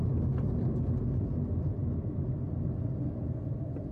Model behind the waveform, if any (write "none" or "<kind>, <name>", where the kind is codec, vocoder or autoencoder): none